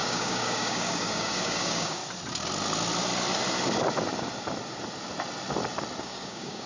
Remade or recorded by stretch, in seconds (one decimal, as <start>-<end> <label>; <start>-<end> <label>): 0.0-2.0 remade; 2.0-6.0 recorded; 6.0-6.7 remade